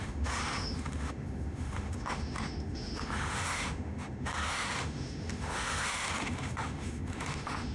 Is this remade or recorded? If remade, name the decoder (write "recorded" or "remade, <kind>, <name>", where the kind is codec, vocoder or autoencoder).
remade, autoencoder, DAC-VAE